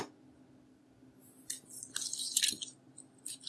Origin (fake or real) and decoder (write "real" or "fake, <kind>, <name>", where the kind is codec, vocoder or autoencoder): real